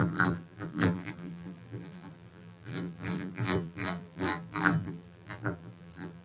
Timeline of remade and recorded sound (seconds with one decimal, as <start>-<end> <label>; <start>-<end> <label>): 0.0-6.2 remade